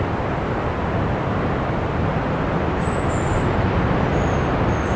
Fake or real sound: real